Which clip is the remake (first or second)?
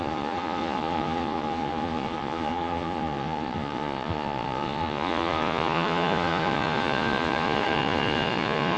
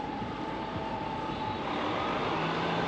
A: first